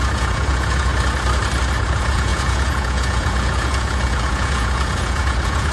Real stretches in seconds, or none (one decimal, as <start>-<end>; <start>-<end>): 0.9-1.8